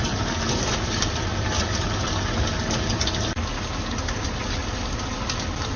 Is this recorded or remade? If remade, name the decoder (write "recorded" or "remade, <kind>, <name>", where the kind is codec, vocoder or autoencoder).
recorded